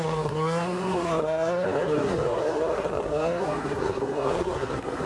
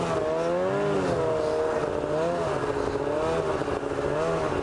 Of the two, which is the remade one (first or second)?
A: first